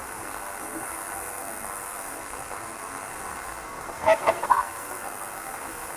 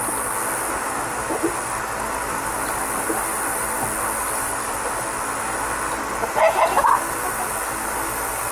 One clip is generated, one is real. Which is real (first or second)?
second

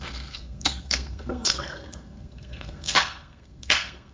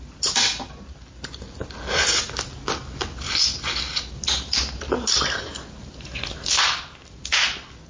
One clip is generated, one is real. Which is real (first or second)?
second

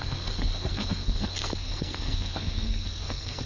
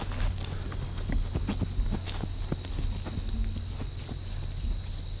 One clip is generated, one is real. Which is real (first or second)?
second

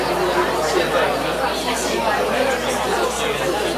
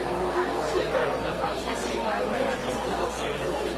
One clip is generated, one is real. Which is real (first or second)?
first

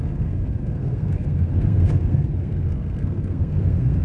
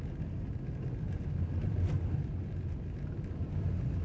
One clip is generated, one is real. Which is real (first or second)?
second